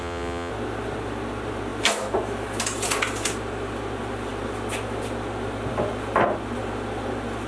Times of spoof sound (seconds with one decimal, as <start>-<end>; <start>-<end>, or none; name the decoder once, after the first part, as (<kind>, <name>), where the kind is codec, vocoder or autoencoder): 0.0-0.5 (vocoder, WaveNeXt)